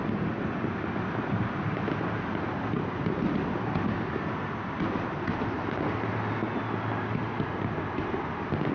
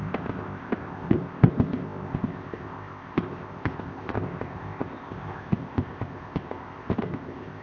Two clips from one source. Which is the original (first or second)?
first